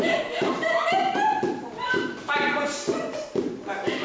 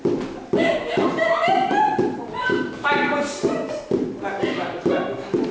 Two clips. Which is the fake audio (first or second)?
first